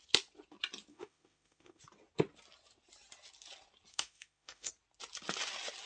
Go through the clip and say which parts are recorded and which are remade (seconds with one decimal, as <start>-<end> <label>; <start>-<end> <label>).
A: 0.0-0.9 recorded; 0.9-1.8 remade; 1.8-3.9 recorded; 3.9-4.7 remade; 4.7-5.9 recorded